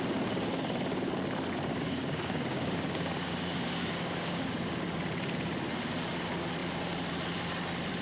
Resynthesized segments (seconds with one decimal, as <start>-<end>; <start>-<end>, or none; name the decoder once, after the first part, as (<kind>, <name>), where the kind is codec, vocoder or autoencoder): 1.7-4.5 (codec, DAC)